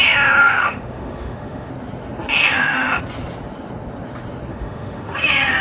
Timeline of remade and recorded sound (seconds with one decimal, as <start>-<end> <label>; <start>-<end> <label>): 0.0-0.4 recorded; 0.4-1.7 remade; 1.7-2.4 recorded; 2.4-3.0 remade; 3.0-4.5 recorded; 4.5-5.6 remade